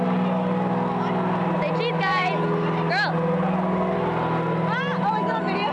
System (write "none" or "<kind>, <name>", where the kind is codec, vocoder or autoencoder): none